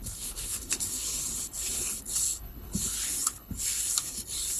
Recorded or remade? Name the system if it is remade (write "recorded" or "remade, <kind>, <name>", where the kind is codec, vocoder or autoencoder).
remade, codec, HILCodec